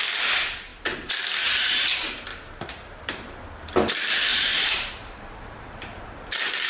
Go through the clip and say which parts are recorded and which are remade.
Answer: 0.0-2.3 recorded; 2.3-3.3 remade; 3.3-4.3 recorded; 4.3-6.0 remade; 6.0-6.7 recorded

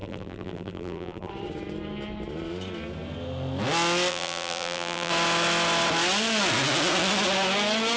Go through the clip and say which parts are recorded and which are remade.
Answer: 0.0-1.3 remade; 1.3-4.1 recorded; 4.1-5.1 remade; 5.1-8.0 recorded

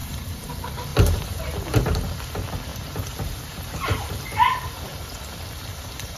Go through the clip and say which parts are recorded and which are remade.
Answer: 0.0-0.5 remade; 0.5-0.9 recorded; 0.9-1.4 remade; 1.4-2.7 recorded; 2.7-4.1 remade; 4.1-5.7 recorded; 5.7-6.2 remade

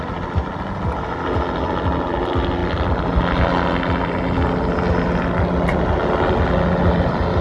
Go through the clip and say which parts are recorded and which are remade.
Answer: 0.0-7.4 recorded

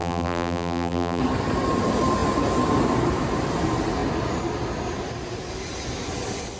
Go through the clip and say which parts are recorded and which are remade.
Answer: 0.0-1.2 remade; 1.2-6.6 recorded

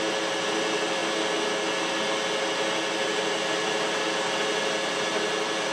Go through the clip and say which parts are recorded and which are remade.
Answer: 0.0-5.7 recorded

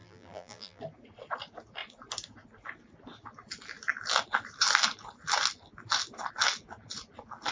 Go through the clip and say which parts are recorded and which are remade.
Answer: 0.0-0.8 remade; 0.8-7.5 recorded